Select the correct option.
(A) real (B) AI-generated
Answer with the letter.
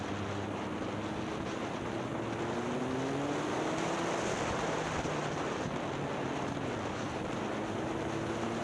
A